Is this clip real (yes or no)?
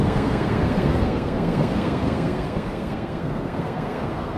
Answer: no